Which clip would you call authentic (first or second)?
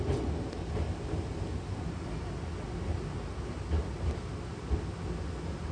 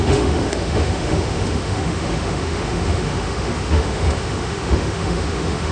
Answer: first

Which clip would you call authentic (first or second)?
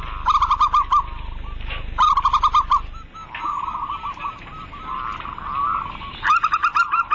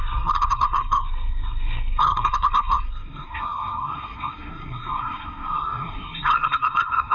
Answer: first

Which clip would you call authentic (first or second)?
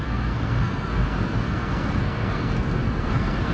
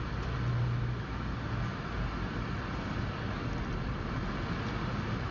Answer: second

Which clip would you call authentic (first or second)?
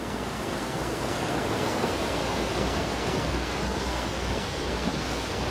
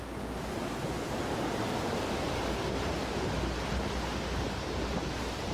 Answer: second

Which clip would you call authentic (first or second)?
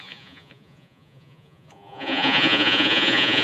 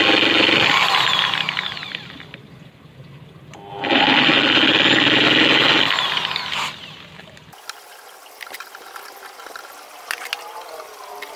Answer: second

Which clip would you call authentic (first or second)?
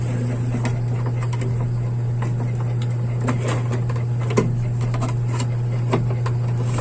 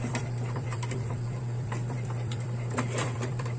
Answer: first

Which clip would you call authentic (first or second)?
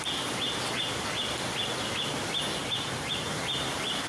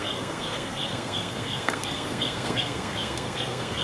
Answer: first